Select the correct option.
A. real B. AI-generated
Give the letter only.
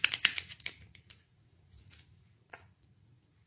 B